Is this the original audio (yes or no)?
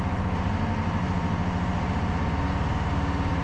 yes